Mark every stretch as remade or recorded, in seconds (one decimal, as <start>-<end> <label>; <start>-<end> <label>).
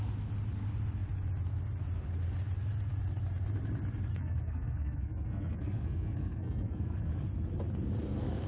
0.0-4.1 recorded; 4.1-7.1 remade; 7.1-8.5 recorded